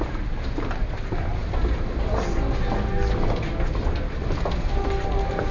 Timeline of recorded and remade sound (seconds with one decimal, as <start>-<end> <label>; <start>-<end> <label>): 0.0-5.5 recorded